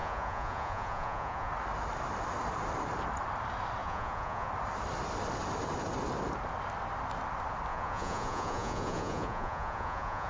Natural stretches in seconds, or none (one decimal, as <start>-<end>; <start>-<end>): 1.5-3.8; 4.5-7.7